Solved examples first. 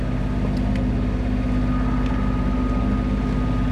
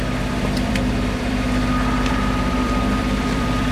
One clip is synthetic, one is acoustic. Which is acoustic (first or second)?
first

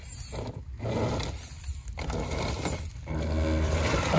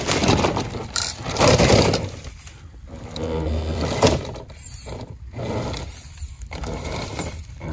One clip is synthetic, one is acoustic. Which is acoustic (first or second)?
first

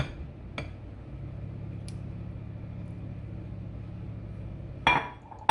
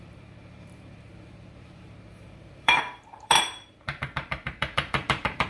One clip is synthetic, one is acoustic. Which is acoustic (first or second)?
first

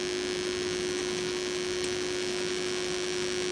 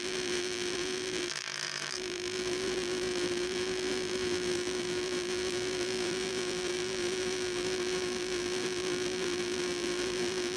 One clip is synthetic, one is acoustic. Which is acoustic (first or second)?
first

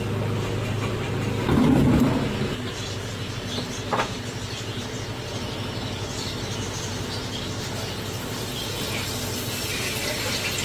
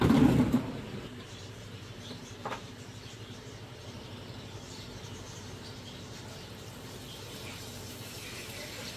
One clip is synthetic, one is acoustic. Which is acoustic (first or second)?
first